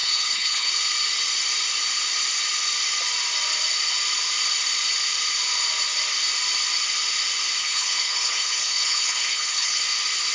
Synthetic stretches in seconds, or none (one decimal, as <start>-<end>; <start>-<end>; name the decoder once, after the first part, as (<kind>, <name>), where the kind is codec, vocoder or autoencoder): 0.0-0.7 (codec, HILCodec); 7.6-9.8